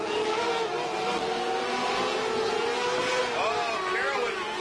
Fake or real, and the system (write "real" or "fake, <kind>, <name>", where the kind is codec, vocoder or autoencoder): real